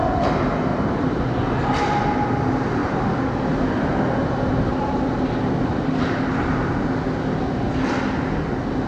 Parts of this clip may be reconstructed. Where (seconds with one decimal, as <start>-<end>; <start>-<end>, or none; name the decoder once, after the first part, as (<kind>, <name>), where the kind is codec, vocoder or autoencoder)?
0.7-1.2 (vocoder, BigVGAN v2); 2.8-3.6; 4.7-6.9